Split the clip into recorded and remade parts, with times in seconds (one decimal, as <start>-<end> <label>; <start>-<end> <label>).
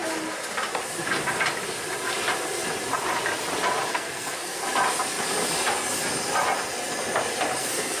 0.0-3.9 recorded; 3.9-4.6 remade; 4.6-7.6 recorded; 7.6-8.0 remade